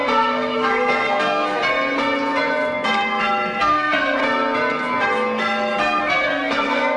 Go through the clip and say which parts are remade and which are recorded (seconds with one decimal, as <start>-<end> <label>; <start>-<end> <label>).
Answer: 0.0-1.6 remade; 1.6-3.6 recorded; 3.6-4.2 remade; 4.2-6.0 recorded; 6.0-7.0 remade